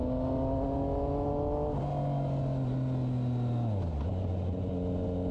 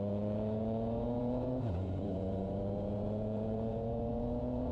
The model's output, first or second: second